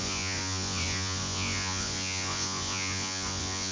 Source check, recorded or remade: remade